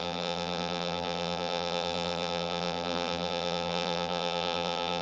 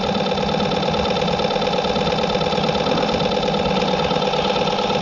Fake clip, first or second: first